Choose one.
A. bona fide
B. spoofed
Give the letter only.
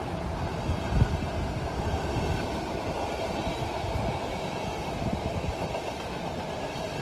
A